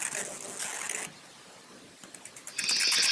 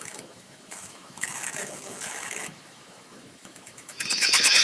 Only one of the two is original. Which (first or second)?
first